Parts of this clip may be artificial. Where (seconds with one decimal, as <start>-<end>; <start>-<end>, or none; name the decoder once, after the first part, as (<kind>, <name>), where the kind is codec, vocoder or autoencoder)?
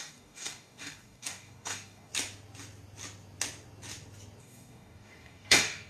0.0-2.1 (codec, DAC); 4.4-5.9